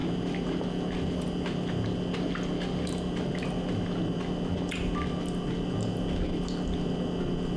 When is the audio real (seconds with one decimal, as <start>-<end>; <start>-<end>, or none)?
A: 0.0-7.6